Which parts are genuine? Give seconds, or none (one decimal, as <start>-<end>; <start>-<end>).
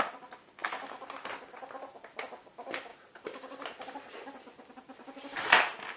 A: 0.0-2.9; 5.6-6.0